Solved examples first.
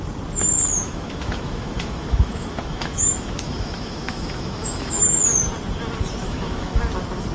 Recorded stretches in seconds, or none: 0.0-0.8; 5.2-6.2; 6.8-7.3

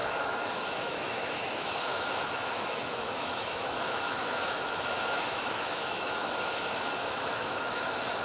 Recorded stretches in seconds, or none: none

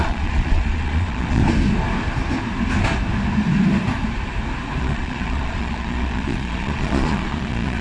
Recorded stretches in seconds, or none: 1.4-4.8

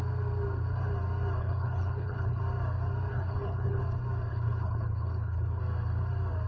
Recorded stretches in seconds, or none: 0.0-1.4; 2.4-3.1; 3.8-4.3; 5.6-6.5

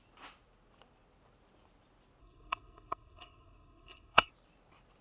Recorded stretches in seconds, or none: 0.0-2.2; 4.3-5.0